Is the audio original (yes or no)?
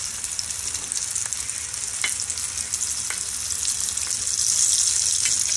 yes